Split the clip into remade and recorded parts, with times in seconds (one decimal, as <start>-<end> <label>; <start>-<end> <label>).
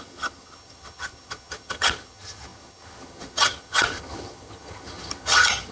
0.0-5.7 remade